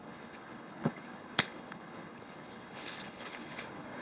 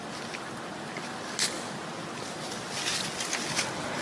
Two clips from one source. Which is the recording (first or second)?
second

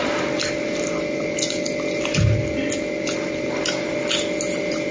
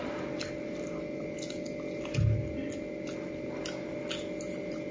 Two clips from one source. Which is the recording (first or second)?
second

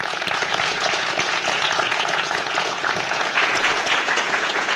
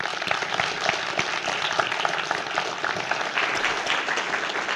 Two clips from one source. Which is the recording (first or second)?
second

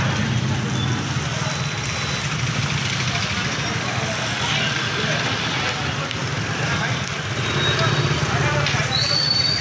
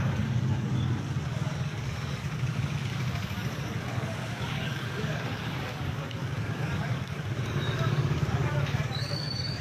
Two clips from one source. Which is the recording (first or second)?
first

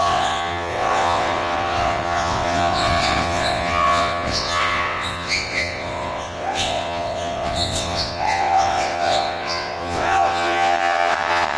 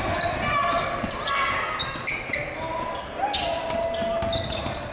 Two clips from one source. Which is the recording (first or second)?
second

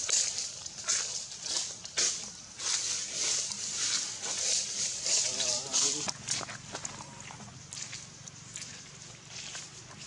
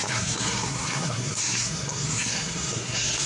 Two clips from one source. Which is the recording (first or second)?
first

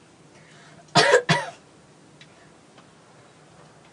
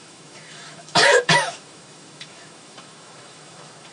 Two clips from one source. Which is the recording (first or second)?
first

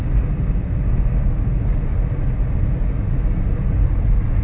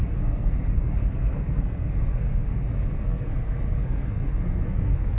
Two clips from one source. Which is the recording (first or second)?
first